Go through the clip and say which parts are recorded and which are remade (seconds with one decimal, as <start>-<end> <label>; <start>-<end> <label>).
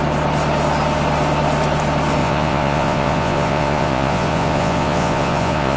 0.0-2.2 recorded; 2.2-5.8 remade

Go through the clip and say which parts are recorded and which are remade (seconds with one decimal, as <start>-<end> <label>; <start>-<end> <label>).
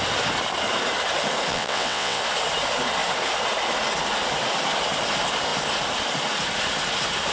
0.0-1.5 recorded; 1.5-2.2 remade; 2.2-7.3 recorded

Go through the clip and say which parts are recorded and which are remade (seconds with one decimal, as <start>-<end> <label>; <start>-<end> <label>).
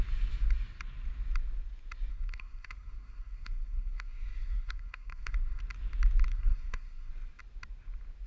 0.0-2.1 recorded; 2.1-5.6 remade; 5.6-6.3 recorded; 6.3-7.1 remade; 7.1-8.3 recorded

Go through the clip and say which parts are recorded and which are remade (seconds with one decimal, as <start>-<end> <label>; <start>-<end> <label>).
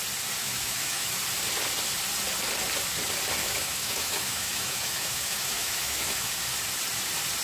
0.0-0.4 recorded; 0.4-1.2 remade; 1.2-3.4 recorded; 3.4-6.3 remade; 6.3-7.4 recorded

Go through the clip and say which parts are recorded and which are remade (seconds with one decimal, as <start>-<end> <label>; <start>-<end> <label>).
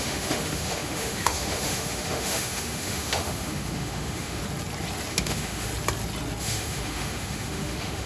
0.0-4.4 remade; 4.4-5.1 recorded; 5.1-5.7 remade; 5.7-6.4 recorded; 6.4-8.1 remade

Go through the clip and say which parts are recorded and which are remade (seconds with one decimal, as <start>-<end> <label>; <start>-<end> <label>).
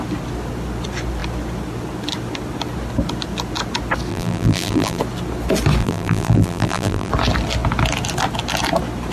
0.0-4.1 recorded; 4.1-5.0 remade; 5.0-5.8 recorded; 5.8-7.1 remade; 7.1-9.1 recorded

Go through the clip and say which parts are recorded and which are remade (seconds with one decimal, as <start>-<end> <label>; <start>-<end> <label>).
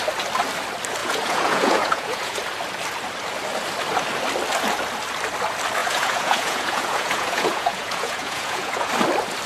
0.0-1.0 recorded; 1.0-2.4 remade; 2.4-5.8 recorded; 5.8-8.9 remade; 8.9-9.5 recorded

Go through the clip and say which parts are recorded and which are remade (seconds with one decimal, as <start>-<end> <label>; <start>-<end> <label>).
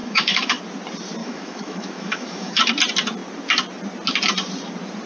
0.0-0.6 remade; 0.6-1.2 recorded; 1.2-2.6 remade; 2.6-5.1 recorded